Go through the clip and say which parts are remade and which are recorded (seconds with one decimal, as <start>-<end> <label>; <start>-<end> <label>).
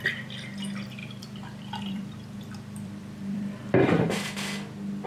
0.0-1.0 recorded; 1.0-4.0 remade; 4.0-5.1 recorded